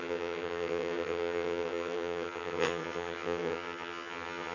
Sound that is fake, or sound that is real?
fake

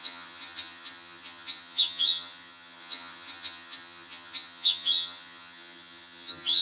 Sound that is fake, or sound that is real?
fake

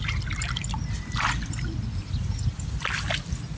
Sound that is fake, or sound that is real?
real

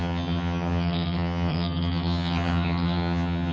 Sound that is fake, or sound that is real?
fake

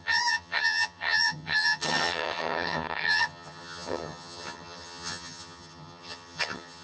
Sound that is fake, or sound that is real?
fake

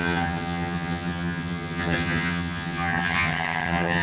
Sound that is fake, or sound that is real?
fake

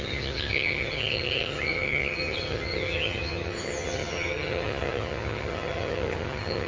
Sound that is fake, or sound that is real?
fake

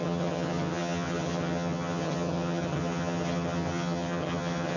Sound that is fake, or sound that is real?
fake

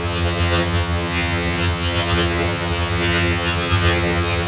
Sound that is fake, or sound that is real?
fake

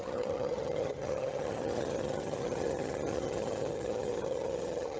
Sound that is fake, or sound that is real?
fake